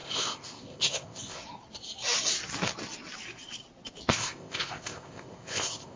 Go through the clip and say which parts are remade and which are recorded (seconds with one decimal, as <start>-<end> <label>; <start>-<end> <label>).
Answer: 0.0-1.4 remade; 1.4-4.1 recorded; 4.1-6.0 remade